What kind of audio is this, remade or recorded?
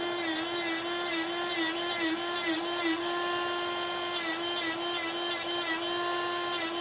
recorded